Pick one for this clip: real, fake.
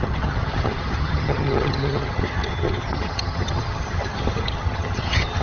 fake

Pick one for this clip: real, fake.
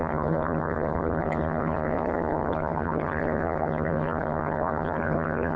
fake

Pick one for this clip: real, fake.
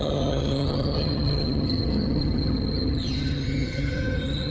fake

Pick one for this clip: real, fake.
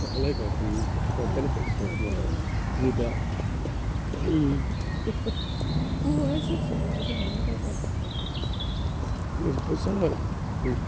real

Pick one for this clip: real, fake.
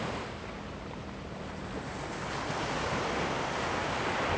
real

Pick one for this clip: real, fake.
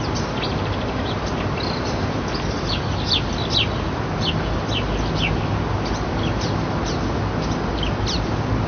real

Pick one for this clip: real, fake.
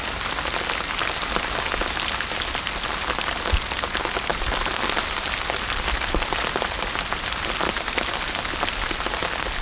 real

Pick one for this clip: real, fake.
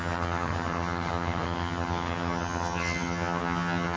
fake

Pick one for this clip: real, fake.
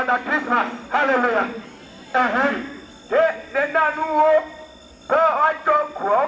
real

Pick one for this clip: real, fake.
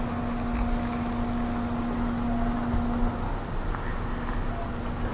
real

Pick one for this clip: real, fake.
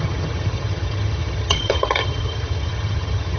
fake